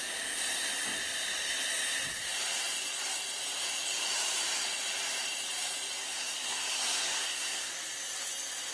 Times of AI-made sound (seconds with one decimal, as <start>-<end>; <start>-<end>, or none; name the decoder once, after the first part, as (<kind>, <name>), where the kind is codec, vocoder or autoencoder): 6.0-7.7 (codec, SNAC)